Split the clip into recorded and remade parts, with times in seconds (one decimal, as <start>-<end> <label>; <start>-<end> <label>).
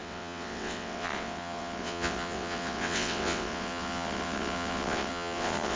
0.0-5.8 remade